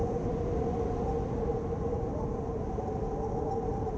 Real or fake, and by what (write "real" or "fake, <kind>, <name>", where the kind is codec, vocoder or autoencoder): real